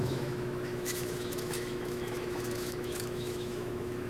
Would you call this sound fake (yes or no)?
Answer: yes